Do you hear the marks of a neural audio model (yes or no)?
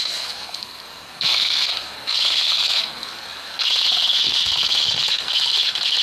yes